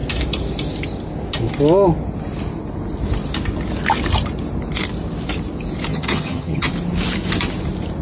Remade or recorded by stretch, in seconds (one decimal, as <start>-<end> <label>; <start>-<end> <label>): 0.0-5.9 recorded; 5.9-6.7 remade; 6.7-8.0 recorded

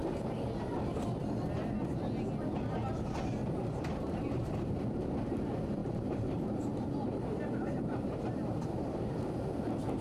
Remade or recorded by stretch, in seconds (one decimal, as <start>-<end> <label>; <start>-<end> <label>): 0.0-3.6 recorded; 3.6-4.8 remade; 4.8-5.8 recorded; 5.8-8.8 remade; 8.8-10.0 recorded

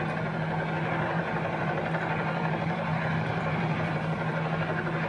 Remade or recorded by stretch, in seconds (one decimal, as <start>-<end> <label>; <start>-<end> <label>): 0.0-1.2 recorded; 1.2-4.3 remade; 4.3-5.1 recorded

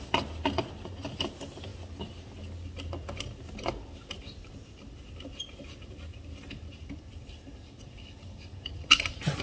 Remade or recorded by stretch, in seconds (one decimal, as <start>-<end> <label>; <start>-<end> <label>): 0.0-9.4 recorded